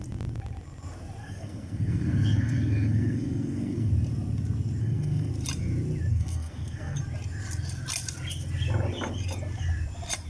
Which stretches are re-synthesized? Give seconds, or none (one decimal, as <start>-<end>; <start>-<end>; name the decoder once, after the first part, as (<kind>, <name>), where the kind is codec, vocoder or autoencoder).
1.2-3.9 (codec, SNAC); 4.8-5.3; 6.1-7.0